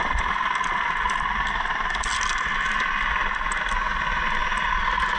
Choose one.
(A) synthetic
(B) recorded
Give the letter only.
B